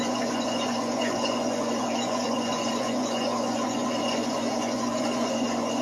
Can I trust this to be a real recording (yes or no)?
no